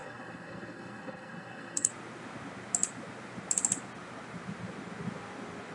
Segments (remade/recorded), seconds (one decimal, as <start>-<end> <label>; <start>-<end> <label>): 0.0-1.9 remade; 1.9-5.7 recorded